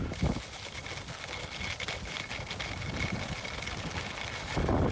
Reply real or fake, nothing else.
real